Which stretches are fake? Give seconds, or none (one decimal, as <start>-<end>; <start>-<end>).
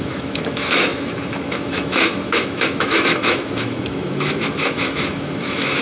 0.0-5.8